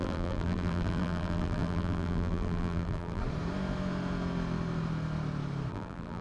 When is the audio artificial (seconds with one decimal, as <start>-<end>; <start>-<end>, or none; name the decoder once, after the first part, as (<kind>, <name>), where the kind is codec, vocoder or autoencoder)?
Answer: 0.0-3.2 (vocoder, BigVGAN v2); 5.7-6.2